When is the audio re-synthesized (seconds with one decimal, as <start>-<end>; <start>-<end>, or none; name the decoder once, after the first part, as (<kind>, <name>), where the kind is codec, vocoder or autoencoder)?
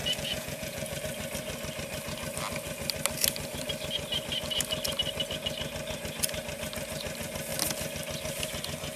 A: 0.0-1.0 (vocoder, Vocos)